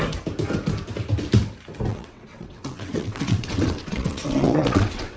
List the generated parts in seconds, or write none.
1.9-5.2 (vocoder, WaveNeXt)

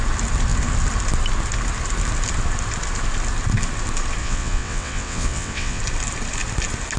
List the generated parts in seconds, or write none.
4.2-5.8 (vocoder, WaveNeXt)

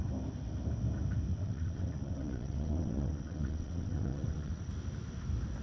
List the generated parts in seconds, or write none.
1.3-4.7 (vocoder, WaveNeXt)

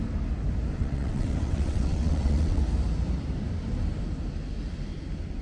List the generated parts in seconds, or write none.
0.8-2.6 (vocoder, WaveNeXt)

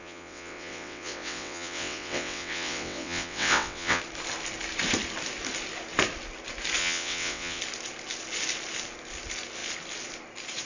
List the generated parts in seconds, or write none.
0.0-4.0 (vocoder, WaveNeXt); 6.8-7.6